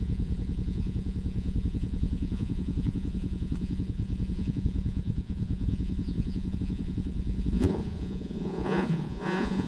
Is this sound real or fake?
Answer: fake